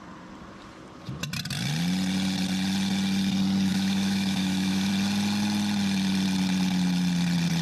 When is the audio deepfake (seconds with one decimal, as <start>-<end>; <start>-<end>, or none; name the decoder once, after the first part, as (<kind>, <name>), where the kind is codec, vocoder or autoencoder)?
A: 3.7-4.9 (autoencoder, DAC-VAE)